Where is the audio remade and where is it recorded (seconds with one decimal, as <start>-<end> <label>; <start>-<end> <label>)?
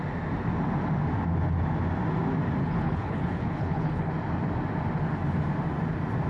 0.0-2.6 recorded; 2.6-4.1 remade; 4.1-6.3 recorded